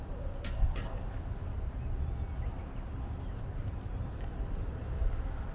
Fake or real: real